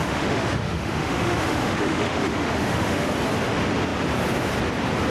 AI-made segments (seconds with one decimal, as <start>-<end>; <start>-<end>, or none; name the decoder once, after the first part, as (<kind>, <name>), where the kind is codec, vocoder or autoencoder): 0.0-3.1 (autoencoder, DAC-VAE)